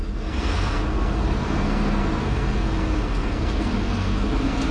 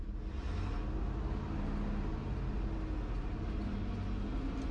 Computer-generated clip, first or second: first